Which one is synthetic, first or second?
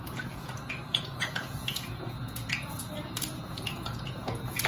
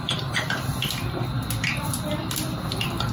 first